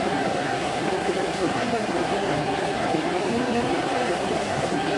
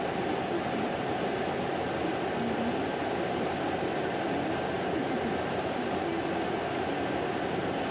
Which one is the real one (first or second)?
second